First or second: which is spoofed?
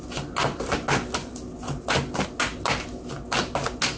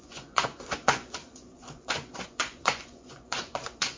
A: second